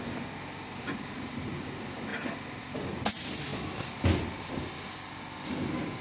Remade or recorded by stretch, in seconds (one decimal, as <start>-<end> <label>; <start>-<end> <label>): 0.0-6.0 recorded